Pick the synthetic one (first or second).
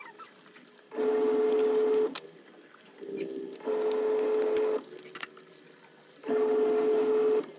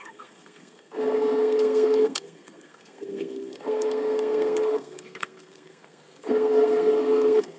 second